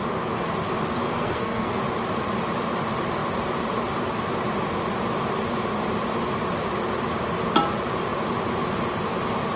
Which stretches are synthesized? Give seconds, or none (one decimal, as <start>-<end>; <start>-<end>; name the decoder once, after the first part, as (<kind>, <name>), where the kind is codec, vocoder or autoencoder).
1.0-1.8 (codec, SNAC)